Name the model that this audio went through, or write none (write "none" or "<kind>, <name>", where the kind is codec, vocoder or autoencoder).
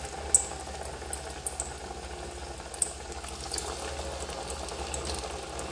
none